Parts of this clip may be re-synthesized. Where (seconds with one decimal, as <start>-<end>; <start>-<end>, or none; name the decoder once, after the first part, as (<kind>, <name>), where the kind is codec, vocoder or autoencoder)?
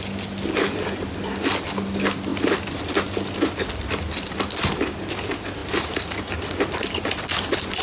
none